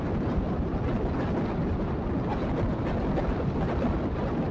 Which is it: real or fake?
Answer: real